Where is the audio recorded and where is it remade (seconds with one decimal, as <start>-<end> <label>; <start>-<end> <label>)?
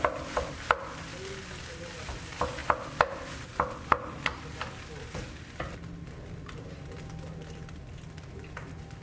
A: 0.0-9.0 recorded